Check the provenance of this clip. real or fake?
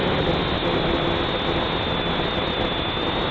real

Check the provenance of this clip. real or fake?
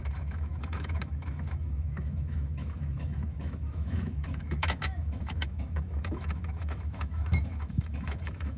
fake